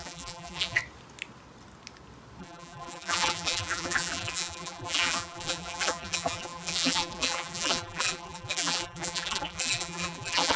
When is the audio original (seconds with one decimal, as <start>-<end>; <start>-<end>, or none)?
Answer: 0.8-2.4

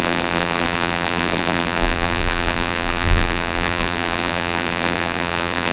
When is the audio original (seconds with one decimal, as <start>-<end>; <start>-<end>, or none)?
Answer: none

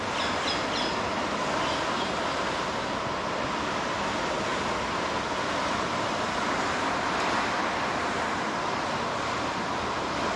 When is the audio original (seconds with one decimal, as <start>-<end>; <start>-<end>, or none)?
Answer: 0.0-10.4

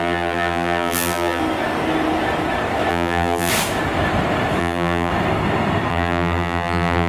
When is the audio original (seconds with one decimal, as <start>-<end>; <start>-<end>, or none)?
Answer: 1.4-2.9; 3.5-4.6; 5.1-5.9

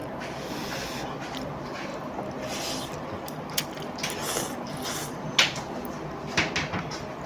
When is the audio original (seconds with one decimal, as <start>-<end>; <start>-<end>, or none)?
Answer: 0.0-7.3

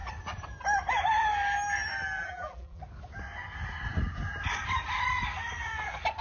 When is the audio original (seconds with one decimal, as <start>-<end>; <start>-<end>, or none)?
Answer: 0.0-2.2; 2.8-6.2

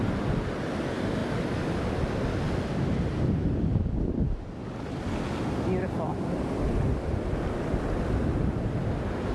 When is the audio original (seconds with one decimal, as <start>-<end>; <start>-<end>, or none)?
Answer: 0.0-9.3